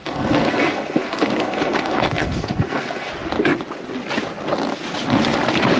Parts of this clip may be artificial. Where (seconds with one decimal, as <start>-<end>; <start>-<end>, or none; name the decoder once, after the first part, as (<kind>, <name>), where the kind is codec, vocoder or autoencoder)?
0.0-3.1 (codec, SNAC)